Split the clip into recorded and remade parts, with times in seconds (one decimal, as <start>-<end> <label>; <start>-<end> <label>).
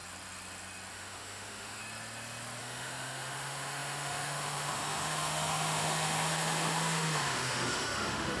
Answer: 0.0-0.9 recorded; 0.9-1.8 remade; 1.8-2.6 recorded; 2.6-8.4 remade